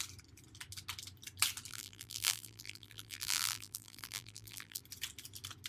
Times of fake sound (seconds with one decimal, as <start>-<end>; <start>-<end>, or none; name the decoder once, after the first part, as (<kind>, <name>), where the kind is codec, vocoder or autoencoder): 1.7-4.8 (vocoder, BigVGAN v2)